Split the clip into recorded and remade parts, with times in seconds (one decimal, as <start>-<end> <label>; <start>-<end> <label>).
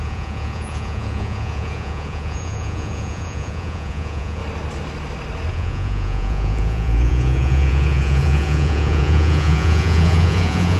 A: 0.0-4.4 remade; 4.4-5.5 recorded; 5.5-10.8 remade